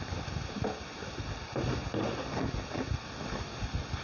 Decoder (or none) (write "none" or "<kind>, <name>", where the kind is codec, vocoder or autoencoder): none